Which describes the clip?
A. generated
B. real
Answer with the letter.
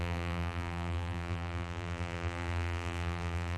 A